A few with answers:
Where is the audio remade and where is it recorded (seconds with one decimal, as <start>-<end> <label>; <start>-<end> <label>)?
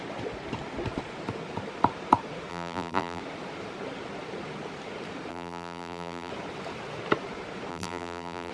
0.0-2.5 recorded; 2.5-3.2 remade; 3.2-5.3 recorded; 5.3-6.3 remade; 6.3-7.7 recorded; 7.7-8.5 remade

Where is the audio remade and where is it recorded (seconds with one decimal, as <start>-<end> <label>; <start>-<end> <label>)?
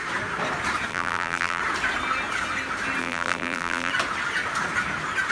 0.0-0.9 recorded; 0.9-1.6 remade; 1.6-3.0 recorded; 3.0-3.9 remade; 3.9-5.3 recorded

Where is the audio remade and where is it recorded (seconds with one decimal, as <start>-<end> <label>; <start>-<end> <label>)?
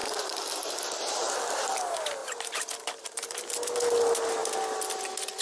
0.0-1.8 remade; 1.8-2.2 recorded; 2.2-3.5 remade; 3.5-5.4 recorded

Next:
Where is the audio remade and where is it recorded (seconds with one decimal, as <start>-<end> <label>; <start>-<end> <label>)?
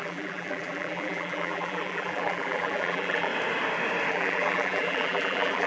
0.0-3.3 remade; 3.3-4.1 recorded; 4.1-5.7 remade